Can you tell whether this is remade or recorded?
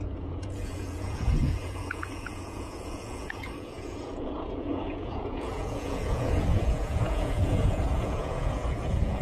remade